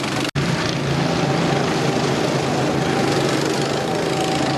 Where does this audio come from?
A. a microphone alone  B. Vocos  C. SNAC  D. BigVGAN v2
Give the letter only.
A